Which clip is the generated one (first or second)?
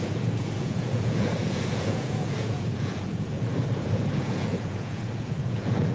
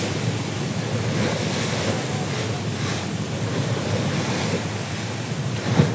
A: first